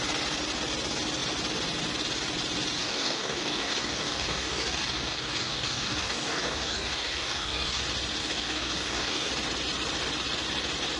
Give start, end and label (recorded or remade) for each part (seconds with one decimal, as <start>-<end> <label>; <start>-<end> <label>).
0.0-2.8 recorded; 2.8-7.8 remade; 7.8-8.2 recorded; 8.2-9.3 remade; 9.3-11.0 recorded